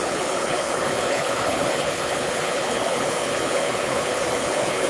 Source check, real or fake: fake